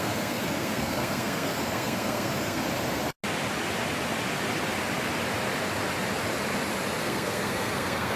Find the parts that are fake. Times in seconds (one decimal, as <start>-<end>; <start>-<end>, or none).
0.0-2.6; 7.0-8.2